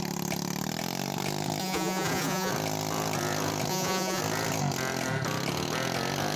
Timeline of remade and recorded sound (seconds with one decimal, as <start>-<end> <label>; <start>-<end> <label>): 0.0-1.6 recorded; 1.6-2.5 remade; 2.5-3.7 recorded; 3.7-4.2 remade; 4.2-6.4 recorded